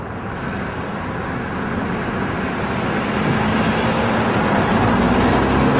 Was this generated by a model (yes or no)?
no